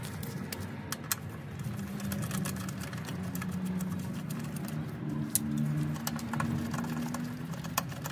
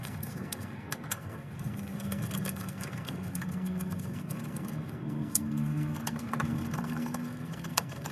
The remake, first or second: second